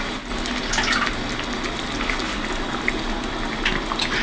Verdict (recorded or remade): recorded